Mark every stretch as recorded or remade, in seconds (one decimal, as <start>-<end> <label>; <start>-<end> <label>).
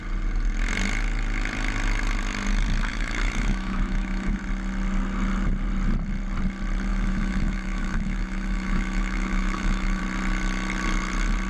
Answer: 0.0-2.9 recorded; 2.9-4.4 remade; 4.4-6.9 recorded; 6.9-10.0 remade; 10.0-11.5 recorded